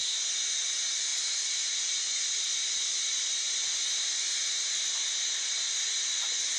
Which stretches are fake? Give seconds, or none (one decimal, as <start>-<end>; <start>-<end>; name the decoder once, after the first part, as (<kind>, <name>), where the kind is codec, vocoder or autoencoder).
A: none